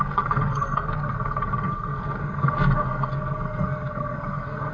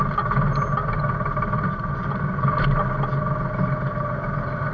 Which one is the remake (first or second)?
first